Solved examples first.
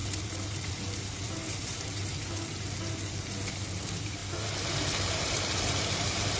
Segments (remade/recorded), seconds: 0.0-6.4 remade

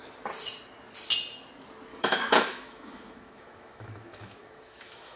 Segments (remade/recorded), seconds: 0.0-1.9 recorded; 1.9-5.2 remade

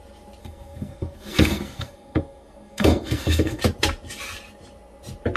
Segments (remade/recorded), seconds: 0.0-0.4 recorded; 0.4-3.6 remade; 3.6-5.4 recorded